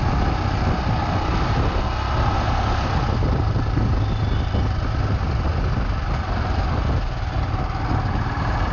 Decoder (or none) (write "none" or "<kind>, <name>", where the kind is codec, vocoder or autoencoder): none